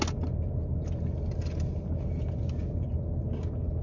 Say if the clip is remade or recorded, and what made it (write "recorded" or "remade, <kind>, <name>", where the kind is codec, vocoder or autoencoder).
recorded